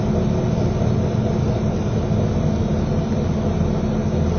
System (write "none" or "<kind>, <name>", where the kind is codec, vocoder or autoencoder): none